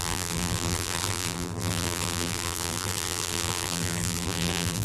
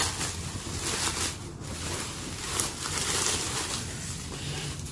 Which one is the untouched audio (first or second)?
second